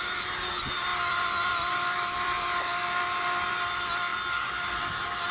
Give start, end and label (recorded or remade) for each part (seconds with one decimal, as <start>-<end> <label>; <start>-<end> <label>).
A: 0.0-0.9 recorded; 0.9-1.7 remade; 1.7-5.3 recorded